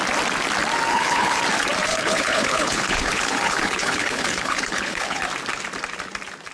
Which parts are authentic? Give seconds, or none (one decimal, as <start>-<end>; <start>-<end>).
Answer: 0.0-0.9; 1.4-1.9; 5.2-6.5